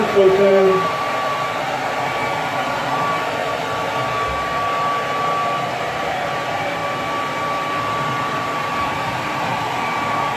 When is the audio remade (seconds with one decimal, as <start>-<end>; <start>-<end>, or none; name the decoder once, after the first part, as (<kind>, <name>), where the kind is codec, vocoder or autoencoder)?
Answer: 0.0-2.2 (vocoder, BigVGAN v2); 2.9-3.4; 5.8-6.8; 8.3-10.4

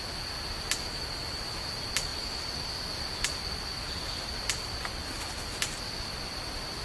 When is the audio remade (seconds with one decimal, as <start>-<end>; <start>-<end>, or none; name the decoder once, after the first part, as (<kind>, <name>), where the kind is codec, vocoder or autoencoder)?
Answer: none

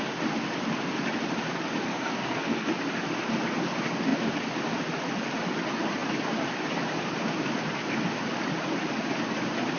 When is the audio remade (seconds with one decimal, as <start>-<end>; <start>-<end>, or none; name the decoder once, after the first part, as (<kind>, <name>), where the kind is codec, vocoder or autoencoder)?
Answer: 1.9-2.7 (codec, SNAC)

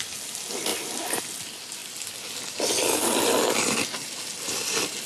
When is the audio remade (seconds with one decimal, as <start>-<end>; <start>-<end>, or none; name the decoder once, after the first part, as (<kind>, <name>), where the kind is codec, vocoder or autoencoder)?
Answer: none

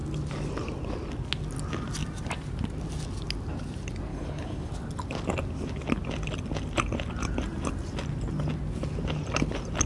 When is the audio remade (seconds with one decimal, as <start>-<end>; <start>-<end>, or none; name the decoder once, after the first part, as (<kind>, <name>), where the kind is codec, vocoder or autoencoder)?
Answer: 4.1-4.7 (codec, HILCodec)

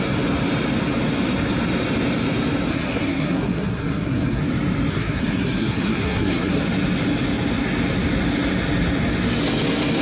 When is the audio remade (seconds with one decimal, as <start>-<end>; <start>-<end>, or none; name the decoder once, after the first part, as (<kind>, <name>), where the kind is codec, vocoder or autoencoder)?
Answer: 2.7-4.4 (codec, SNAC); 4.9-6.6